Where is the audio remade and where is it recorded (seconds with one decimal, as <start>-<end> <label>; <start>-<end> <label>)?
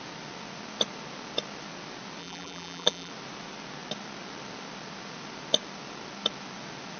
0.0-2.2 recorded; 2.2-3.1 remade; 3.1-7.0 recorded